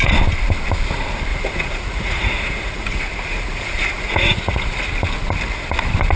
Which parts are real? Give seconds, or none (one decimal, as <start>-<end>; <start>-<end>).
0.0-1.3; 4.9-6.2

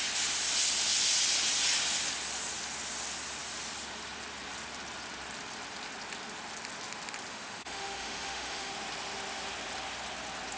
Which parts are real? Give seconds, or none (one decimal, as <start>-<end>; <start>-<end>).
0.0-7.3; 8.7-10.6

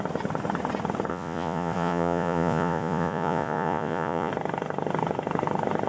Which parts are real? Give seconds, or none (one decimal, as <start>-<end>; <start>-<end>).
0.0-1.1; 4.3-5.9

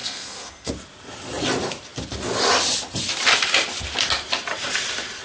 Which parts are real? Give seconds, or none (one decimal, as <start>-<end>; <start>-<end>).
0.7-5.2

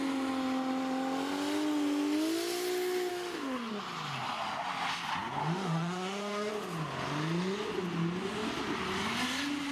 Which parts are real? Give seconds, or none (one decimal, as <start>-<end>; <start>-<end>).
0.0-3.1; 3.7-5.4; 6.5-9.7

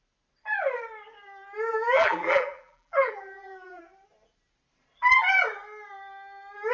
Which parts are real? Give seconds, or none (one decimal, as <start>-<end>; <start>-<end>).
0.0-1.7; 3.8-6.7